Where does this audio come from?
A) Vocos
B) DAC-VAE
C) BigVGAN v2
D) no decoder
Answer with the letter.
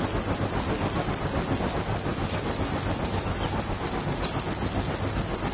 D